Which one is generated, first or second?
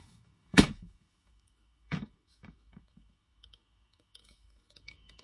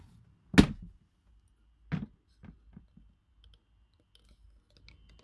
first